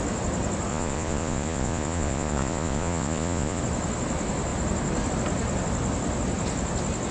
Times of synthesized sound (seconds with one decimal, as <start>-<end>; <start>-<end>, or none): 0.7-3.6